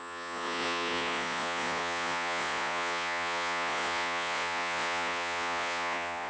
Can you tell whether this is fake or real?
fake